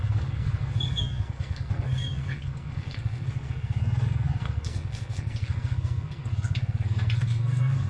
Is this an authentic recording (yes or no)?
no